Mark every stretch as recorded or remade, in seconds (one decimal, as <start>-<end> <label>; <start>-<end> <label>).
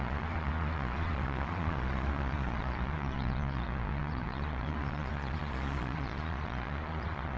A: 0.0-7.4 remade